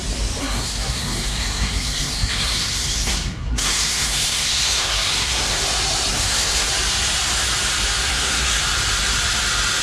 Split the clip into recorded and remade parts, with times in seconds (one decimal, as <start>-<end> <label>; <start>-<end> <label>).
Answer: 0.0-0.4 recorded; 0.4-5.6 remade; 5.6-6.1 recorded; 6.1-6.7 remade; 6.7-8.1 recorded; 8.1-8.6 remade; 8.6-9.8 recorded